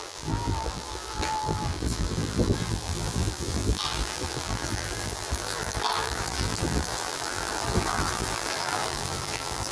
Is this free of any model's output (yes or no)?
no